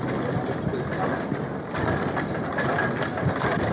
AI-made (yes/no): no